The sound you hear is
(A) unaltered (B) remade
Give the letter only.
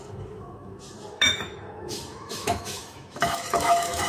B